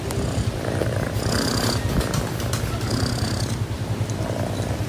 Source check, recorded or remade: recorded